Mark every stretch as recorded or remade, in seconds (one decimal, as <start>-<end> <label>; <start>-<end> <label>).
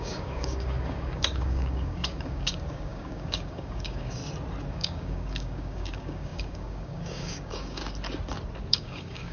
0.0-4.2 remade; 4.2-4.7 recorded; 4.7-7.8 remade; 7.8-8.7 recorded; 8.7-9.3 remade